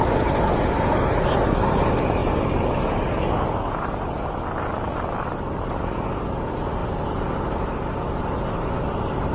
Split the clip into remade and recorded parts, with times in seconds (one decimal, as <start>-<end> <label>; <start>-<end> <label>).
0.0-9.3 recorded